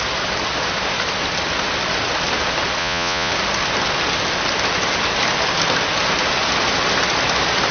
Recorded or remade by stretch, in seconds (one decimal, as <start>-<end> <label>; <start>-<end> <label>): 0.0-2.8 recorded; 2.8-3.3 remade; 3.3-7.7 recorded